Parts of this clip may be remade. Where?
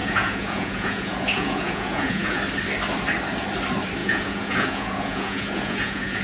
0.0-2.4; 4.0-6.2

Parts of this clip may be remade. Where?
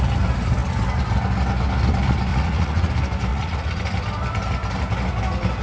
2.3-2.9; 3.3-3.8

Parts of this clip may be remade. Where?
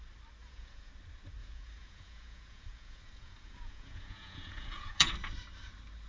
0.4-0.9; 1.4-5.1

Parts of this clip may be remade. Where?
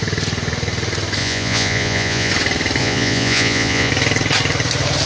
1.2-2.3; 2.8-3.9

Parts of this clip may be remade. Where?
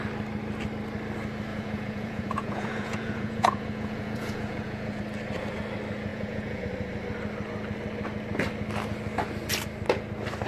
1.5-5.0; 6.1-6.6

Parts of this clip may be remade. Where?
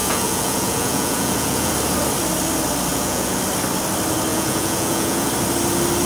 0.0-1.7; 2.9-3.4; 4.3-5.3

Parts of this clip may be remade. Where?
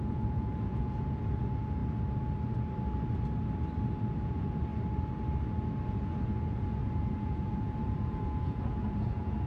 0.0-1.8; 4.1-4.7; 5.9-9.5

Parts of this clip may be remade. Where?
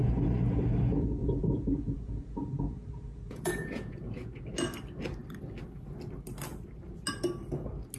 1.2-4.4